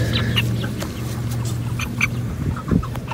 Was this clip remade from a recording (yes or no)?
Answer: no